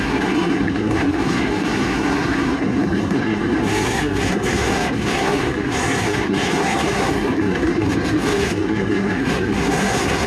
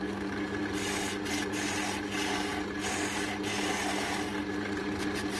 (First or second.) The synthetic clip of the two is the first